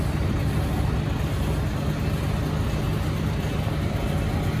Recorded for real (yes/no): yes